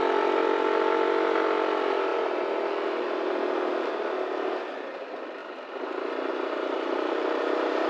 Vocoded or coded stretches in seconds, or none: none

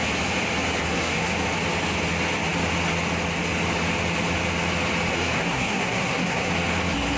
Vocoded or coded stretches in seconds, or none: 0.8-1.3 (codec, SNAC); 5.1-6.5

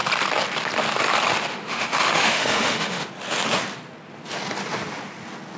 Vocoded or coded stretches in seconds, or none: 1.5-3.1 (autoencoder, DAC-VAE)

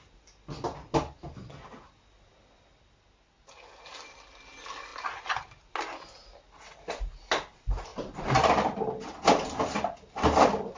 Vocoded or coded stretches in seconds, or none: none

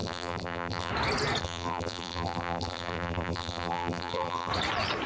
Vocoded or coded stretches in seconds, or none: 0.0-0.9 (vocoder, BigVGAN v2); 1.4-4.5

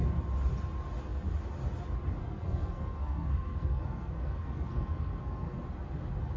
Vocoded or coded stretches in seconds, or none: 2.2-5.5 (codec, SNAC)